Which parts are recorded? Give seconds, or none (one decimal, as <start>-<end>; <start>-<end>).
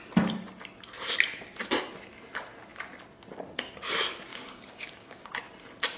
0.0-4.3; 5.4-6.0